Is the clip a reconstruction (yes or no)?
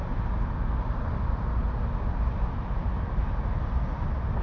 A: no